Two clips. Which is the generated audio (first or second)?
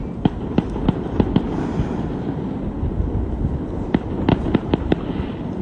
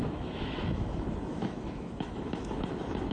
second